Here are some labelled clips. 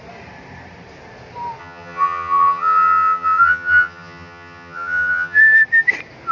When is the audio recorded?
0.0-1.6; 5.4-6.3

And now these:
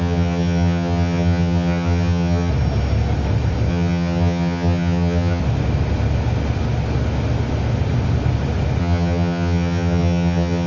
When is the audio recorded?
2.5-3.7; 5.4-8.8

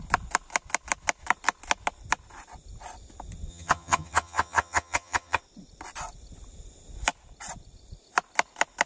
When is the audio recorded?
0.0-3.5; 5.4-8.9

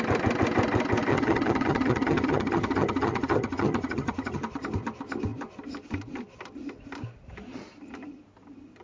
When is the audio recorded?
0.0-1.1; 4.4-8.8

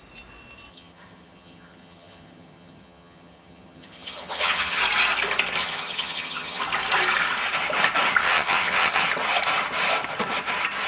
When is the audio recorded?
0.0-0.7; 4.8-5.6; 6.6-8.2; 9.0-10.9

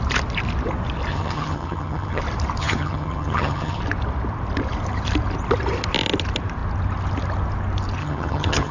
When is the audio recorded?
0.0-1.1; 2.2-2.6; 3.8-8.0

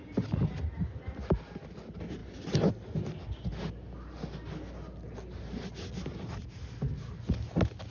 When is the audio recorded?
0.0-7.9